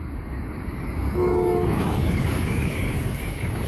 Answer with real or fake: fake